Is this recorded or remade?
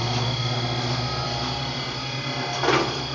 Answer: recorded